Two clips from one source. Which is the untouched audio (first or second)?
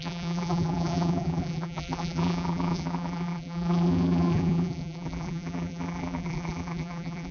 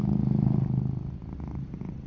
second